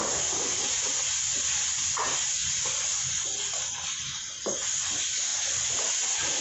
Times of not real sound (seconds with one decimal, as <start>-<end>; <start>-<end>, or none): 2.4-3.0